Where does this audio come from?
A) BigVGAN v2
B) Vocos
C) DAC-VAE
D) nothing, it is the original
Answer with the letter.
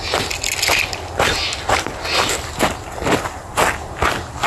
D